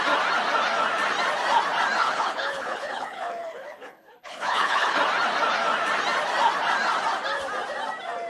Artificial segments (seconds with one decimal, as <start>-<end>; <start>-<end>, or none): 2.0-5.0

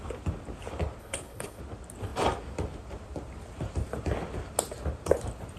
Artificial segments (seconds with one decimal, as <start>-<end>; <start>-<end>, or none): 1.0-1.6

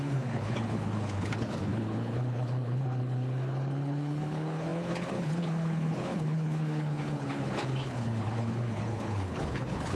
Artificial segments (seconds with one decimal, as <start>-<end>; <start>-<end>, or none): 0.0-10.0